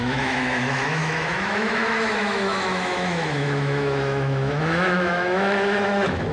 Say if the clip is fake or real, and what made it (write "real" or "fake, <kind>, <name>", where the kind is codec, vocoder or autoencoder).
fake, autoencoder, DAC-VAE